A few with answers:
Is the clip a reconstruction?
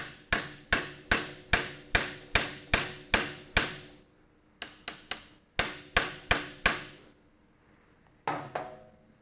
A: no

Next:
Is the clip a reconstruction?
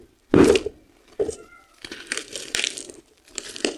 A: yes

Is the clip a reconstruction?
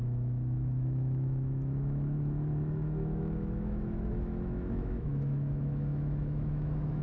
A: yes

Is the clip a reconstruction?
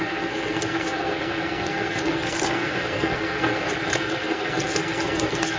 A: yes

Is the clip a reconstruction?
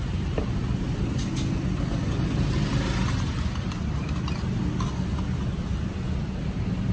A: no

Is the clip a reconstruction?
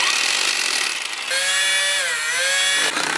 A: no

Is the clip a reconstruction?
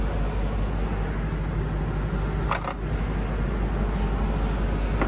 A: no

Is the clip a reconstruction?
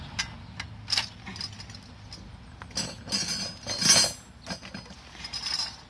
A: no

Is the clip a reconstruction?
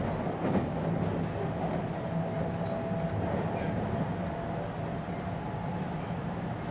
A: no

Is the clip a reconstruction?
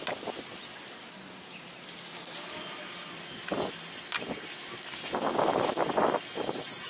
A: no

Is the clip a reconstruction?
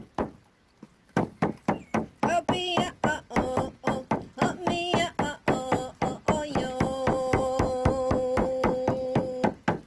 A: no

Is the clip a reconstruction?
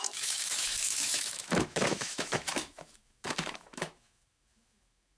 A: yes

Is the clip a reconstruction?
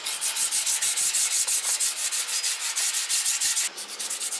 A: no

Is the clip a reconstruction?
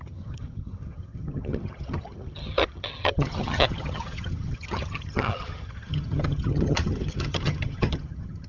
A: yes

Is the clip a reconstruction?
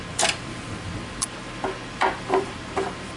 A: yes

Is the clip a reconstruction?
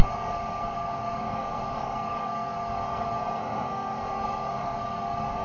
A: yes